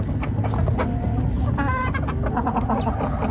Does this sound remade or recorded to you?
recorded